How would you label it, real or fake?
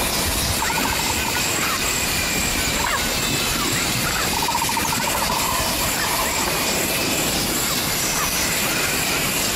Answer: fake